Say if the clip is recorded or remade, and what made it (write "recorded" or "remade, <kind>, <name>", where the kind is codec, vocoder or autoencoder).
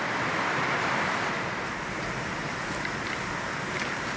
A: recorded